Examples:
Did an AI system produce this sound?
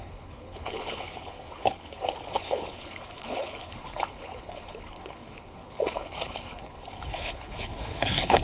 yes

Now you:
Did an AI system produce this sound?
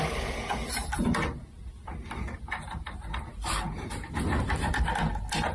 no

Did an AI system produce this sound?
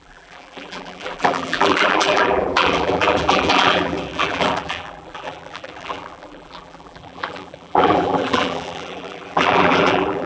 yes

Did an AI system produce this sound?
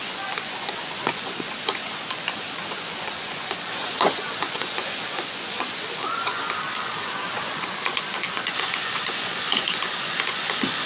yes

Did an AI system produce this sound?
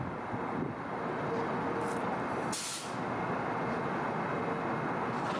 no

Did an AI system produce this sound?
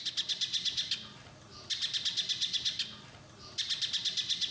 no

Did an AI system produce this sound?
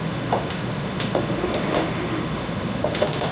yes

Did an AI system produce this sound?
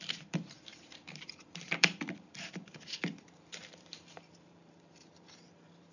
yes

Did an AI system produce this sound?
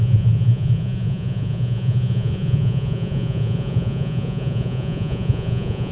yes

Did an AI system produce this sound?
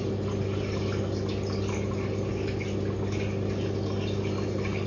no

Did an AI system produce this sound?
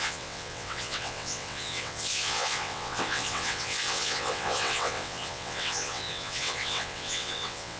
yes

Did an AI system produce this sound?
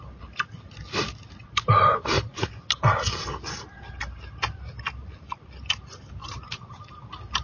no